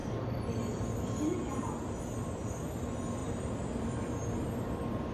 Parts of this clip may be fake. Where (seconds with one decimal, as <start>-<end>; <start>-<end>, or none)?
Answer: 0.0-2.5; 3.2-4.1